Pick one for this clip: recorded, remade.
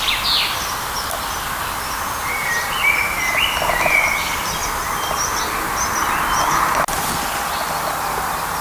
recorded